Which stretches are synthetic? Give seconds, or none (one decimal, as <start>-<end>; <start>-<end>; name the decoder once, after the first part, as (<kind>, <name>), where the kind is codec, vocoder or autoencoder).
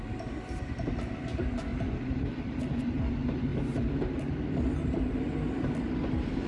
1.7-3.1 (vocoder, BigVGAN v2); 3.5-4.8